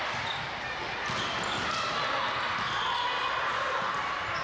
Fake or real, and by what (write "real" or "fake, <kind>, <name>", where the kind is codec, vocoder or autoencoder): real